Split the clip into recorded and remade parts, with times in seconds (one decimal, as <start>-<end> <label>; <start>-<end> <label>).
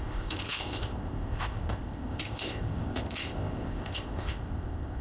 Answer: 0.0-5.0 remade